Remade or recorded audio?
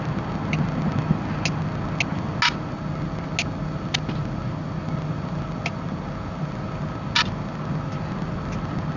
recorded